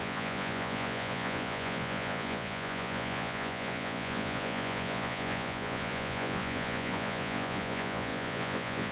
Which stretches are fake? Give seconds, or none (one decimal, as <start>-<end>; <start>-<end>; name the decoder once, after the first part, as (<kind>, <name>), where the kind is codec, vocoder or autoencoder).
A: 0.0-8.9 (vocoder, Vocos)